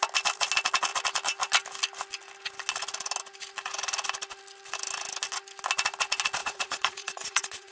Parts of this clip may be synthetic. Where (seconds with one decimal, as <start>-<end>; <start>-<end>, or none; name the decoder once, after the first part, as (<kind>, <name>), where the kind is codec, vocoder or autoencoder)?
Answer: 6.4-7.7 (vocoder, Vocos)